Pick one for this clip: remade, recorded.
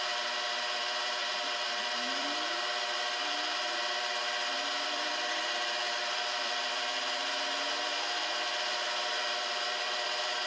remade